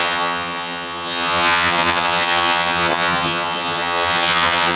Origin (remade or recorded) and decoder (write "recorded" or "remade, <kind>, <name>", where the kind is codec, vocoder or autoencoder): remade, vocoder, HiFi-GAN